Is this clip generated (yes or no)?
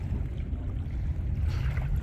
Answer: no